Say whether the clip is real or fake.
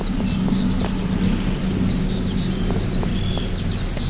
real